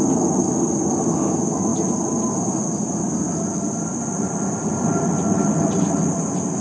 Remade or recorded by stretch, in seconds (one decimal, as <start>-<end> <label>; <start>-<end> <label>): 0.0-3.9 recorded; 3.9-6.6 remade